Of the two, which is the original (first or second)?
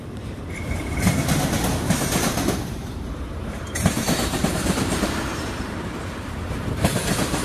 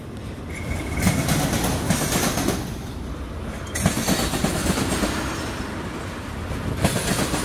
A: second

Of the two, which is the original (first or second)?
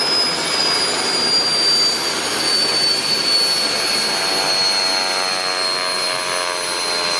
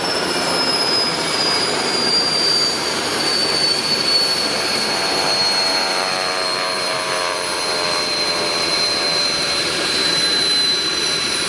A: first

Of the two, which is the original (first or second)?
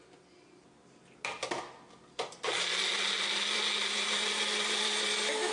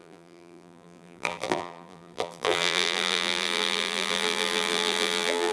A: first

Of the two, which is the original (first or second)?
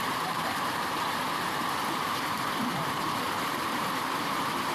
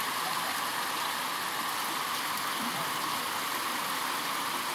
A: second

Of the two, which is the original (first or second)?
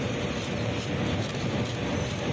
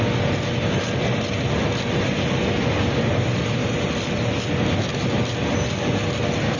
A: second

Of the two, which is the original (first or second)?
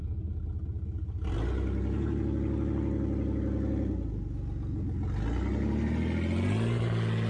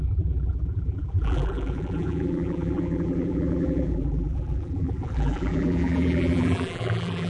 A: first